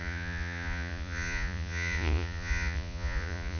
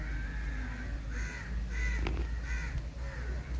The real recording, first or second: second